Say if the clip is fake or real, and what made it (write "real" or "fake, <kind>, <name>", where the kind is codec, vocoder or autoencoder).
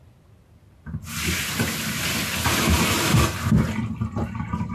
real